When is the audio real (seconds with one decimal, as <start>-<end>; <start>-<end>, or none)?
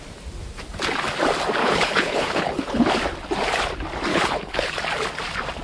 0.0-1.6; 2.9-4.1; 4.7-5.6